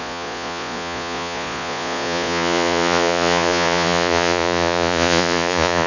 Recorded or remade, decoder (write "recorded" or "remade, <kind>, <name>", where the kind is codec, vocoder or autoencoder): remade, vocoder, Vocos